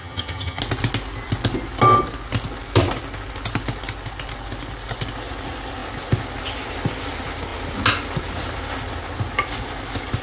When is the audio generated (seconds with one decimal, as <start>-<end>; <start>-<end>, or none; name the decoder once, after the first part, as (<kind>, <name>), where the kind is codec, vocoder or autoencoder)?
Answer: 0.0-0.6 (vocoder, HiFi-GAN)